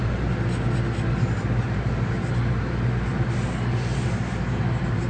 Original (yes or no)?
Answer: yes